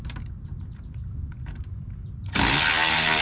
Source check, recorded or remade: recorded